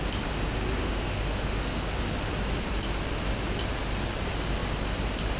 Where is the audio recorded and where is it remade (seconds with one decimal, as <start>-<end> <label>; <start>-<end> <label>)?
0.0-0.8 recorded; 0.8-1.6 remade; 1.6-5.4 recorded